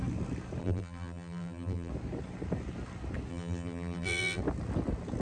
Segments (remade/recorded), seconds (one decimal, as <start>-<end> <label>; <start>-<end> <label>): 0.0-0.6 recorded; 0.6-1.9 remade; 1.9-3.3 recorded; 3.3-4.4 remade; 4.4-5.2 recorded